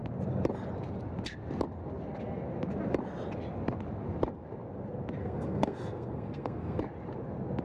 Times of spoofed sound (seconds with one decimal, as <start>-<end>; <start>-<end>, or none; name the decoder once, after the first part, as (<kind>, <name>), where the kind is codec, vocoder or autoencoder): 5.2-6.8 (codec, SNAC)